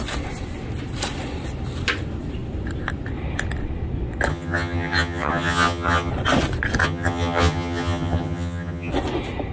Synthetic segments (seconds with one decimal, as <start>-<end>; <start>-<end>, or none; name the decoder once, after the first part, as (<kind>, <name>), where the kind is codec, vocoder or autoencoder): 4.3-6.1 (vocoder, HiFi-GAN); 6.8-8.9